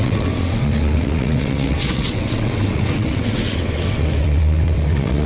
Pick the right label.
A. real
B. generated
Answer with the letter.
B